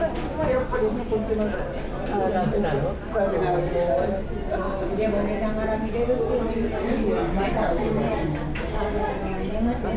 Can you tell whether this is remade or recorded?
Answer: recorded